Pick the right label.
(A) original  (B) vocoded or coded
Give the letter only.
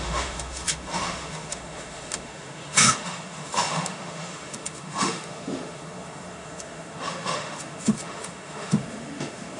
B